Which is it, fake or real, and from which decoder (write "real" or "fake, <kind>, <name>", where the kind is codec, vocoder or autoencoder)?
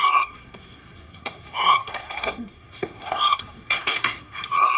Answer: fake, codec, SNAC